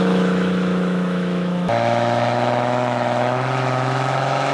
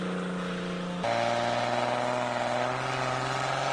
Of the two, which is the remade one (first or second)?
first